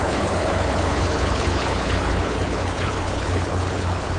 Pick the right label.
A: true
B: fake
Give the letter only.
B